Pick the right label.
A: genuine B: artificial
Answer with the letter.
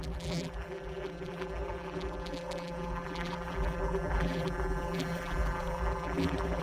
B